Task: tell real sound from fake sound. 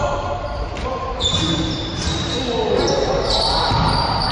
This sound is fake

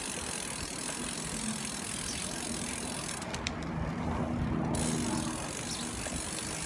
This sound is real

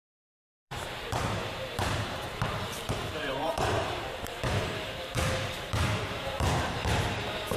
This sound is fake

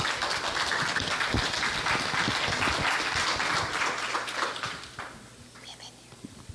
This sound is real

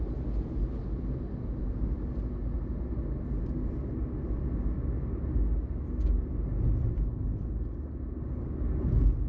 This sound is real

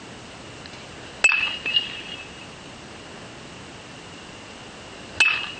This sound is real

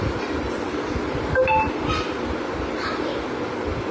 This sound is real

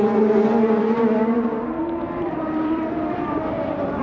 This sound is fake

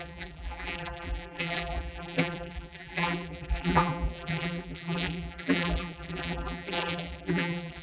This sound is fake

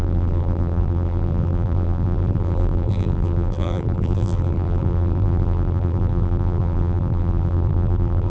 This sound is fake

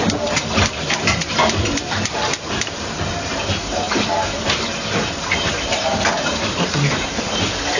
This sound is fake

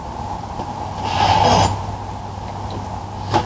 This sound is real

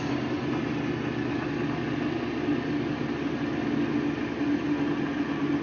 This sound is real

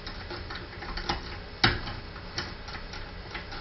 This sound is real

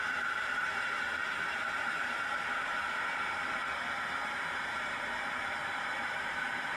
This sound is fake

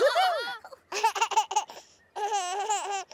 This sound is real